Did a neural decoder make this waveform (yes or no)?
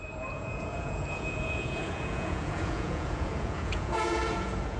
yes